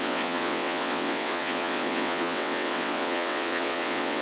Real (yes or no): no